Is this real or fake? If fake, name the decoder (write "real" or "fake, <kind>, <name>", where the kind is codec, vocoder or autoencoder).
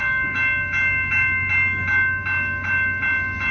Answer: real